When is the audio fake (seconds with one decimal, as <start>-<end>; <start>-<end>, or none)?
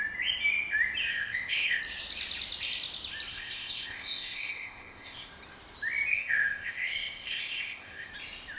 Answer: 1.1-1.8; 3.3-5.3; 6.1-8.1